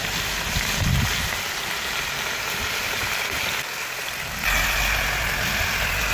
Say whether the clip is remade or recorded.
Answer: recorded